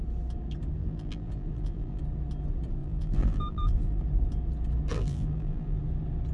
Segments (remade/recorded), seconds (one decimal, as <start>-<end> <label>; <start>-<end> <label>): 0.0-0.8 recorded; 0.8-2.0 remade; 2.0-2.8 recorded; 2.8-4.0 remade; 4.0-4.9 recorded; 4.9-5.8 remade; 5.8-6.3 recorded